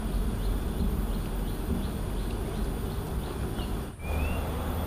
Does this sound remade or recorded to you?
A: recorded